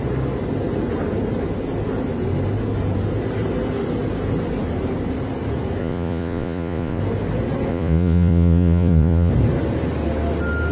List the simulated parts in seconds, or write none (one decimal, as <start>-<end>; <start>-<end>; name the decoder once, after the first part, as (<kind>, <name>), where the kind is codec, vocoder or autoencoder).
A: 5.8-7.0 (vocoder, Vocos); 7.7-9.3